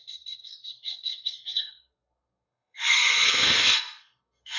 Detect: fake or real fake